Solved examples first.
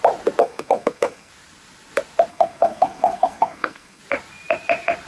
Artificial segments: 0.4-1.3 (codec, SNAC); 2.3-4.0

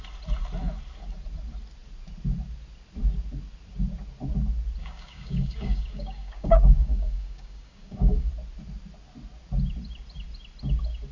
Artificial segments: 4.8-8.3 (codec, DAC)

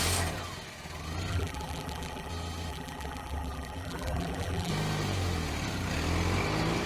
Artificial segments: 1.3-2.3 (vocoder, BigVGAN v2); 2.7-4.7

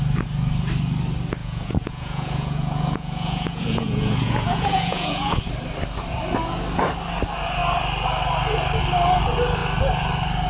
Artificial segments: 1.4-5.4 (vocoder, Vocos)

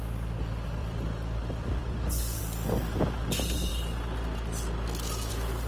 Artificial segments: 0.8-2.4 (vocoder, BigVGAN v2)

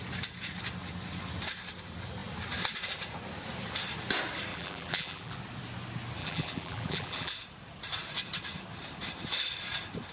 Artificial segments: 4.5-5.4 (vocoder, BigVGAN v2); 6.2-7.3